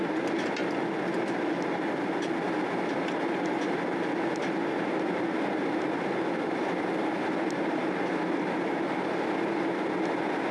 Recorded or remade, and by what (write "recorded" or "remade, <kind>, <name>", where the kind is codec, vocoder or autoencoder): recorded